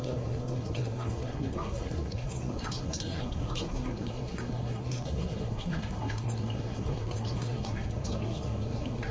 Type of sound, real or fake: fake